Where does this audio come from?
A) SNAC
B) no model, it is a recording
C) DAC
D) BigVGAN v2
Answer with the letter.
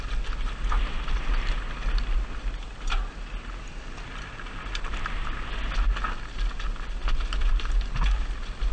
B